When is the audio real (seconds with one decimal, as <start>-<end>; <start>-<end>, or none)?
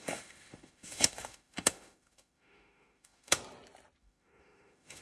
3.4-4.0